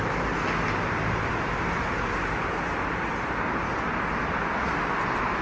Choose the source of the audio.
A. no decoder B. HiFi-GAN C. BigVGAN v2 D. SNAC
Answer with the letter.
A